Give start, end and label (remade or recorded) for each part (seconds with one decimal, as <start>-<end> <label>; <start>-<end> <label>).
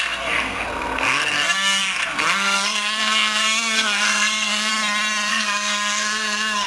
0.0-4.7 remade; 4.7-5.3 recorded; 5.3-6.7 remade